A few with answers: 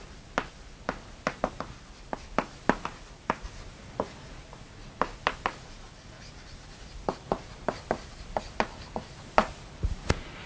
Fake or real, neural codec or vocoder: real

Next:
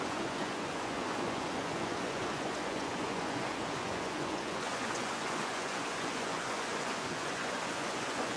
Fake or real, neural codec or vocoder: fake, vocoder, Vocos